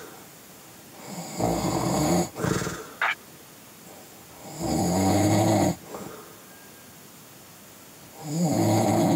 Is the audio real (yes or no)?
yes